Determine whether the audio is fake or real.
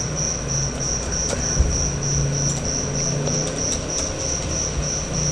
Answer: real